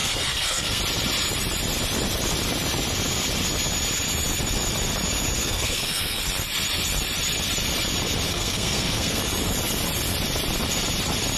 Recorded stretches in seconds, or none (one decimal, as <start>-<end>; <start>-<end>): 0.8-5.4; 6.2-8.3; 9.2-11.4